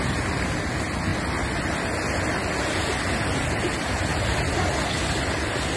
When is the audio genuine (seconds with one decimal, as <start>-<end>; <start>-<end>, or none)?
0.0-5.8